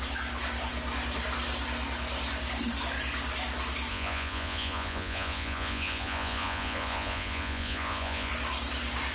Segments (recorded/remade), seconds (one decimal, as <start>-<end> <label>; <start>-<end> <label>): 0.0-3.9 recorded; 3.9-8.3 remade; 8.3-9.1 recorded